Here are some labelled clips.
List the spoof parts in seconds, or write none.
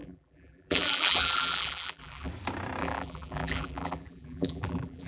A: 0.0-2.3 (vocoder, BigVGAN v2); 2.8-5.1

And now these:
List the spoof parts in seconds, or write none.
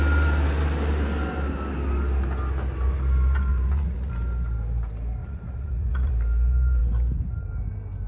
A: 3.5-4.1 (vocoder, Vocos); 5.2-6.1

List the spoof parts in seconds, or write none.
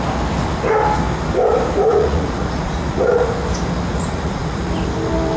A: 1.9-3.3 (vocoder, Vocos); 3.9-4.6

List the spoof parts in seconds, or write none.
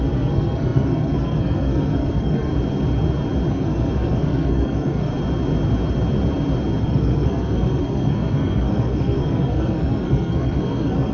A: 0.0-2.5 (codec, SNAC); 3.5-5.1; 6.8-11.1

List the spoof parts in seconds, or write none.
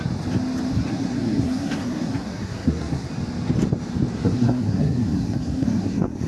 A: 0.7-3.1 (codec, SNAC); 4.1-6.3